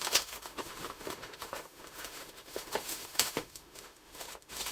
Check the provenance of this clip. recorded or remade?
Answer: remade